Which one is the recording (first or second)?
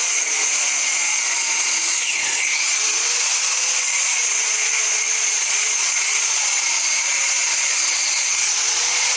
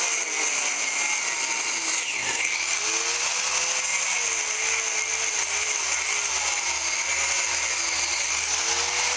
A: second